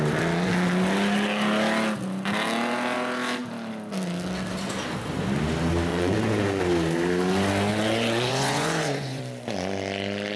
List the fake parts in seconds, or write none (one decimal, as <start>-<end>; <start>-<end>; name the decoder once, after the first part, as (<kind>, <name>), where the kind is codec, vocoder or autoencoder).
5.9-6.6 (vocoder, Vocos); 7.7-9.2